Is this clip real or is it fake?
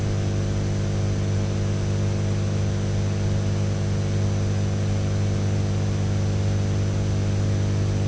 real